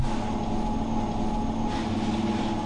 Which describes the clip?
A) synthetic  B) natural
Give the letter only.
B